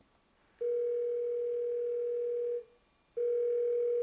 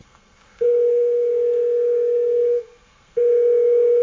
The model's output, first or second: second